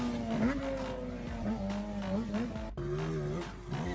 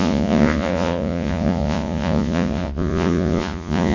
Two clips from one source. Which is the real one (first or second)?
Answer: first